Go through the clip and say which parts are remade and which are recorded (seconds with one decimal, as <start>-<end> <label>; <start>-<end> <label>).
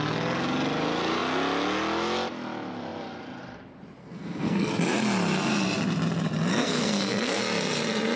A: 0.0-4.0 recorded; 4.0-4.7 remade; 4.7-6.5 recorded; 6.5-7.4 remade; 7.4-8.2 recorded